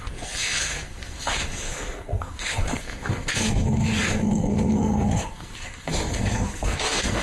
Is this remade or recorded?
remade